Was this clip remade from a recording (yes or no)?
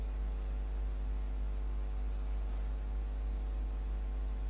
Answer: no